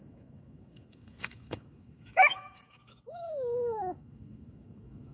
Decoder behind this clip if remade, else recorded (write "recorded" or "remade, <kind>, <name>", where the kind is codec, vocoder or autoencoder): remade, autoencoder, DAC-VAE